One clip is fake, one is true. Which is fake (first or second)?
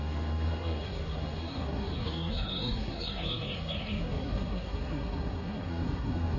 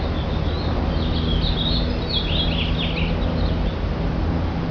first